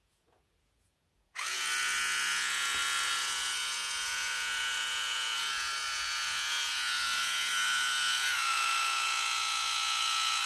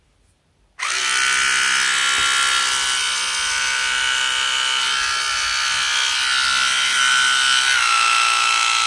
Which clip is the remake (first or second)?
first